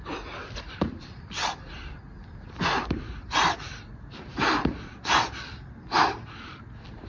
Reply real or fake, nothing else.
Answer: real